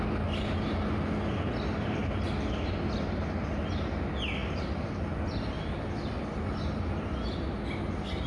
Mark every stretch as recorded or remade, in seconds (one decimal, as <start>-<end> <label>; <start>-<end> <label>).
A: 0.0-8.3 recorded